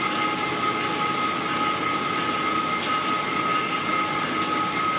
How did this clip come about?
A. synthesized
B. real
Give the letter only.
B